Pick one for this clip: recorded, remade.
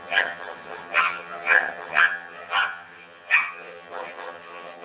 remade